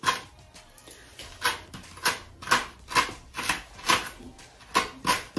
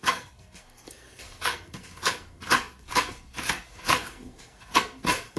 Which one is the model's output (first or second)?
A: second